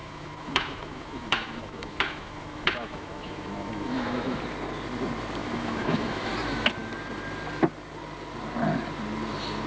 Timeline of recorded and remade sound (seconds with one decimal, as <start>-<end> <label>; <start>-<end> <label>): 0.0-4.4 remade; 4.4-5.4 recorded; 5.4-6.3 remade; 6.3-9.7 recorded